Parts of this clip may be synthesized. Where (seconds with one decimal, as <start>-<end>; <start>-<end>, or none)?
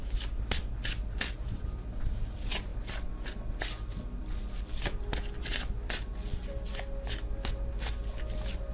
none